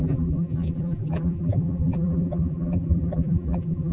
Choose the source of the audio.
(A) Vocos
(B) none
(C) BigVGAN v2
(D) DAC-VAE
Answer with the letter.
C